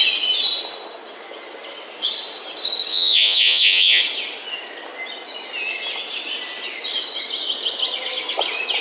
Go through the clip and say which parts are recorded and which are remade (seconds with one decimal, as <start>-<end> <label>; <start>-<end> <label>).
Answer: 0.0-2.9 recorded; 2.9-4.0 remade; 4.0-8.8 recorded